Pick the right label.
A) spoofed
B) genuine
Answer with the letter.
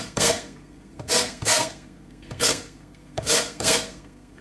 A